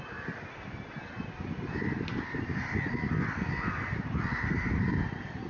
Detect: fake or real real